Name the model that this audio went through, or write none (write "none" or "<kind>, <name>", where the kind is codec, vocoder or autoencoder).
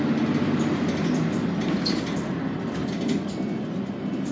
none